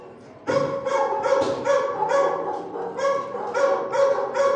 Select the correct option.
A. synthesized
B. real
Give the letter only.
B